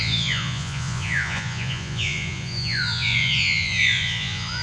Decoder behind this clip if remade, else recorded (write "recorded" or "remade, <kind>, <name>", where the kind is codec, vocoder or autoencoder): remade, vocoder, Vocos